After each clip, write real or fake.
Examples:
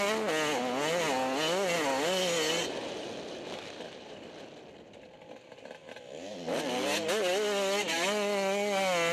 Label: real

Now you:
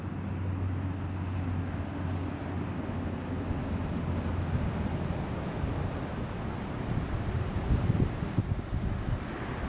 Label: real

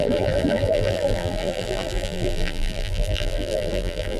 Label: fake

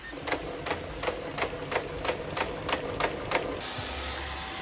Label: real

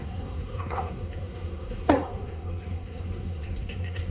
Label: fake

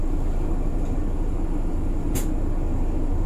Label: fake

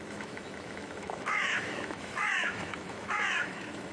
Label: fake